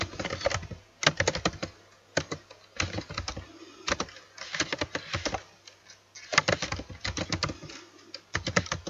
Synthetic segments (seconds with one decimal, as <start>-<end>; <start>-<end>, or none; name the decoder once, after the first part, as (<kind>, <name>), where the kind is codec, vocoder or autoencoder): none